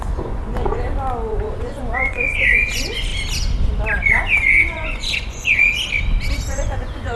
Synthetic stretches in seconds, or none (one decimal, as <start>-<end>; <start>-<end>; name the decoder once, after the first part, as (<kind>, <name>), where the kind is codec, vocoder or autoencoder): 0.0-0.5 (vocoder, Vocos); 1.3-3.1; 4.0-5.7; 6.5-7.2